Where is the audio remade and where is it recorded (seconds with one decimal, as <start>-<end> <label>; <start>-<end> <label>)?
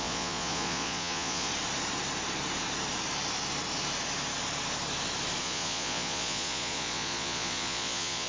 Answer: 0.0-1.5 remade; 1.5-5.4 recorded; 5.4-8.3 remade